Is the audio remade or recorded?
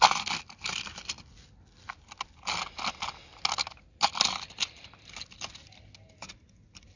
recorded